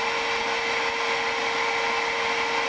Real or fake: real